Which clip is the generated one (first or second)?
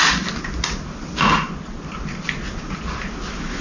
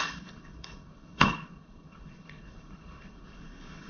second